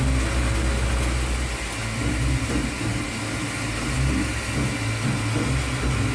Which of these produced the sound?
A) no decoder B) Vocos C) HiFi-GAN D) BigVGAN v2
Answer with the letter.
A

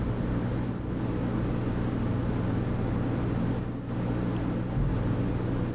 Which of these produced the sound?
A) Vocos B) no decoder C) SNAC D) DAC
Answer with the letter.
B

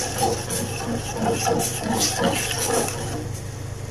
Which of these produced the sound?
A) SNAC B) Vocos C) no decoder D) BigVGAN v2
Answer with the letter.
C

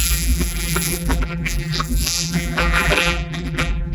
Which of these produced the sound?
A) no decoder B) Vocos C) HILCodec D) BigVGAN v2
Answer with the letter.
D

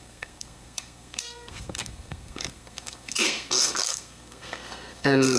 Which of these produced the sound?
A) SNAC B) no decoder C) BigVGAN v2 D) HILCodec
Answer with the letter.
A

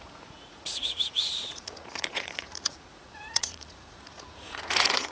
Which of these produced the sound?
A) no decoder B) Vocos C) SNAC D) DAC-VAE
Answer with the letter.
B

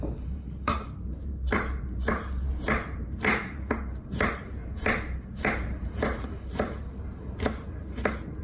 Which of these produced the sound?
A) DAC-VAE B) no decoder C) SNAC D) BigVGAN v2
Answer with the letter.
D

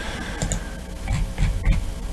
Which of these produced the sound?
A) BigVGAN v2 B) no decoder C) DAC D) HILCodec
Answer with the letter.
B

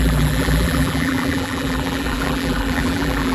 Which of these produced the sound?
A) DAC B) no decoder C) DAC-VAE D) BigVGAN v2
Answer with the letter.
D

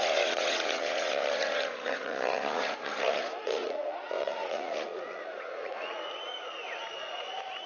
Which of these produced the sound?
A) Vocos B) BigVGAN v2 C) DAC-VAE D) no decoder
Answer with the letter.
A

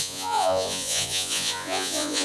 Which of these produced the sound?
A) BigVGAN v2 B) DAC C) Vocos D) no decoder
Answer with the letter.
C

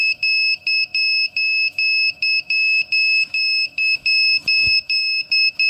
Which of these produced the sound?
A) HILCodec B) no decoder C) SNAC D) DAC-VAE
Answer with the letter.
D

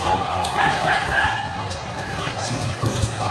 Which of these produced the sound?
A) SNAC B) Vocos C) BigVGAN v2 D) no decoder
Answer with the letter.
A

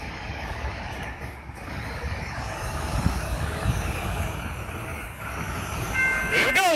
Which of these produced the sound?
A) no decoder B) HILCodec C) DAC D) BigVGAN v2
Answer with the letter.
C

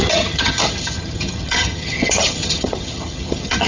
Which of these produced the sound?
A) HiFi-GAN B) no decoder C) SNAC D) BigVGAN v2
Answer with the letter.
A